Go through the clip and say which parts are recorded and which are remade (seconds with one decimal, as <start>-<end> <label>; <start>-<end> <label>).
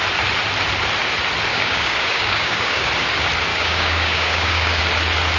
0.0-1.5 recorded; 1.5-2.9 remade; 2.9-3.5 recorded; 3.5-4.8 remade; 4.8-5.4 recorded